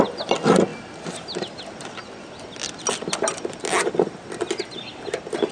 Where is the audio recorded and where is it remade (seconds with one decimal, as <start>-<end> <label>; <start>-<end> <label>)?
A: 0.0-5.5 recorded